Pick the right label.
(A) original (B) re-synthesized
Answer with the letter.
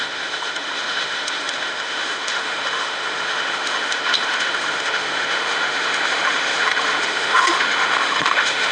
B